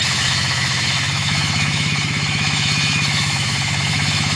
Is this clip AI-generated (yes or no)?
yes